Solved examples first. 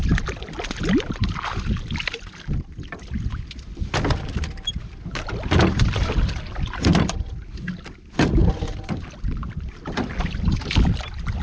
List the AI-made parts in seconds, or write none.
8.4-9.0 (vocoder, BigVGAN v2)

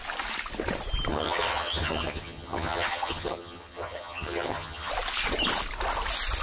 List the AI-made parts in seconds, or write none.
1.1-4.9 (vocoder, HiFi-GAN)

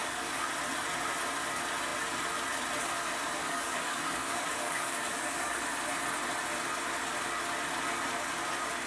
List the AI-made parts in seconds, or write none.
0.0-0.5 (codec, DAC); 3.4-5.6

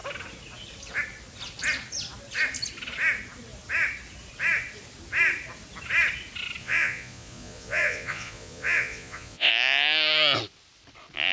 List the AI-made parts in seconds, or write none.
6.6-9.5 (vocoder, Vocos)

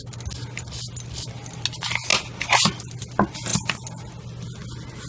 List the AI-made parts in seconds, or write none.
none